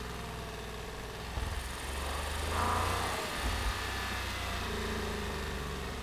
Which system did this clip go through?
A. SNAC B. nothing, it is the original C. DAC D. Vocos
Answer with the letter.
B